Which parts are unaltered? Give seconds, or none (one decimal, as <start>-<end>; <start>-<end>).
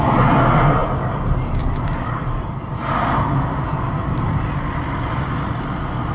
0.0-6.1